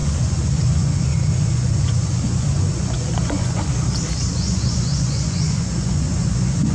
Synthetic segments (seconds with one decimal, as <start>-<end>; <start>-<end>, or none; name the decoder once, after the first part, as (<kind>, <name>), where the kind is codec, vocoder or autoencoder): 0.0-3.7 (vocoder, Vocos); 4.3-6.7